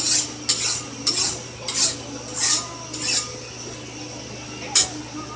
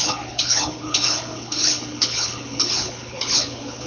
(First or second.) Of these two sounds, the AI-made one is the second